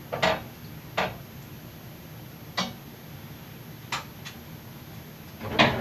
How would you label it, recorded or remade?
recorded